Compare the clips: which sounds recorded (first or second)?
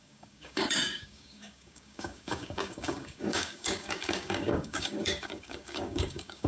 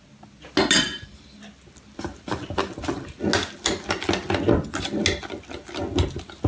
second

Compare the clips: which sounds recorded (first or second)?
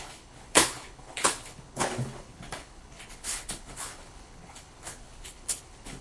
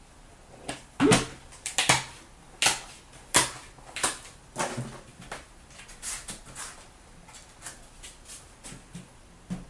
second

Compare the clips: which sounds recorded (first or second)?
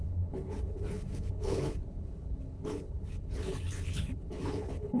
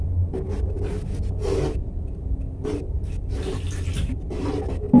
second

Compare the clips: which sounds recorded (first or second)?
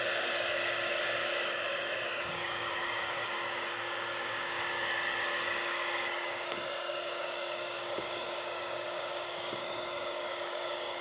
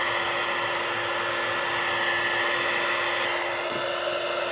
second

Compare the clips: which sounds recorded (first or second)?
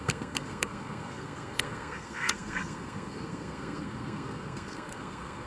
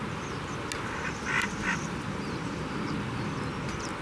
second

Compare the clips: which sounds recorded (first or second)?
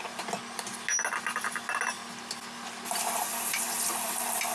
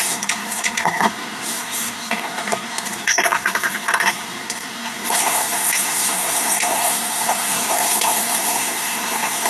first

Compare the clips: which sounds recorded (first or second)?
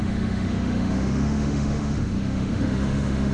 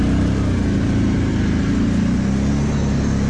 second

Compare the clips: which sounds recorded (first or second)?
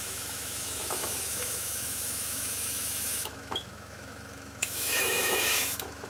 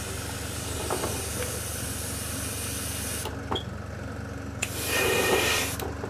second